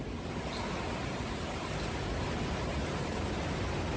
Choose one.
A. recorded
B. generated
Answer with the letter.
A